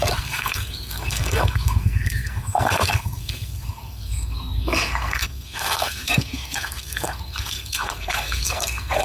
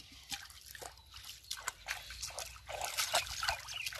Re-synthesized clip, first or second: first